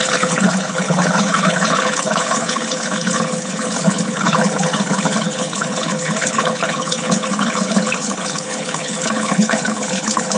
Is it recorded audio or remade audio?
remade